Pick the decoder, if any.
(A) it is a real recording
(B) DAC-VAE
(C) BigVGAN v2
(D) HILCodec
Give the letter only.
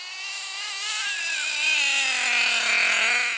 A